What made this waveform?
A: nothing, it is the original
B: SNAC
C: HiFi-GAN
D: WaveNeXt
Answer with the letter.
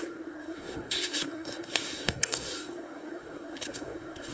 B